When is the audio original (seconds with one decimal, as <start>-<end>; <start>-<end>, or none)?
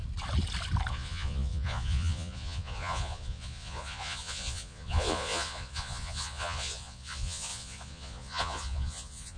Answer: 0.0-0.9